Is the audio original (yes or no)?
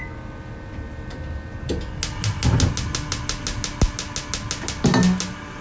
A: yes